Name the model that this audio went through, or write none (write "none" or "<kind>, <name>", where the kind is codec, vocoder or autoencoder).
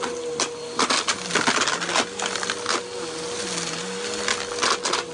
none